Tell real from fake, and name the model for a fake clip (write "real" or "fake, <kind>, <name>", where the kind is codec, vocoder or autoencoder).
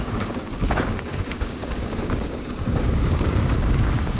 fake, codec, DAC